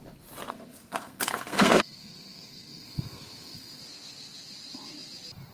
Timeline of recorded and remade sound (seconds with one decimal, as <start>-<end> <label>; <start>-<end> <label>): 0.0-0.5 recorded; 0.5-3.8 remade; 3.8-5.5 recorded